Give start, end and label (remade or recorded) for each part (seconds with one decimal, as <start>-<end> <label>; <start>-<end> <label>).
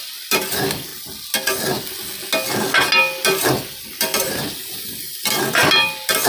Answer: 0.0-0.9 remade; 0.9-3.8 recorded; 3.8-6.3 remade